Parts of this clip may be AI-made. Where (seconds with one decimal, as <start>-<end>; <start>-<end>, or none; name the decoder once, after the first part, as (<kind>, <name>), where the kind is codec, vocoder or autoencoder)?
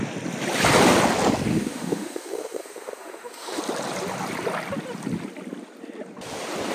1.5-3.6 (autoencoder, DAC-VAE)